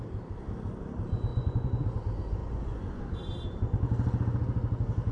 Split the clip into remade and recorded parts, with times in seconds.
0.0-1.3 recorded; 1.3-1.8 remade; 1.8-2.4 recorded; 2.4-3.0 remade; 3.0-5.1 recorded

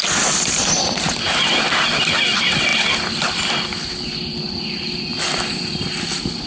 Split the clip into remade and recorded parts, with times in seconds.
0.0-6.5 recorded